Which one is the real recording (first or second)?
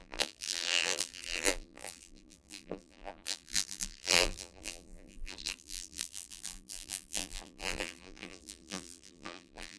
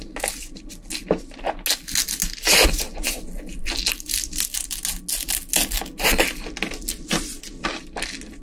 second